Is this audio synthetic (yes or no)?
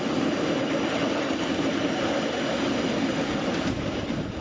no